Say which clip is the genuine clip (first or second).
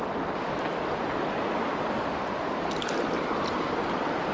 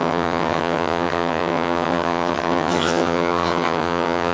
first